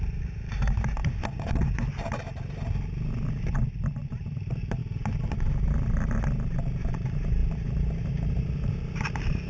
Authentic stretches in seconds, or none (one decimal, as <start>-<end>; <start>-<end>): 1.0-4.0; 4.8-6.8